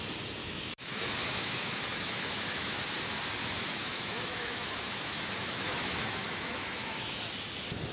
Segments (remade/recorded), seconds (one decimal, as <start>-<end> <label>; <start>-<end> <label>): 0.0-0.4 recorded; 0.4-2.8 remade; 2.8-3.4 recorded; 3.4-7.2 remade; 7.2-7.9 recorded